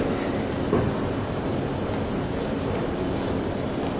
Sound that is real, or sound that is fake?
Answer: real